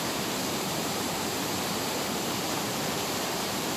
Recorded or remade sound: remade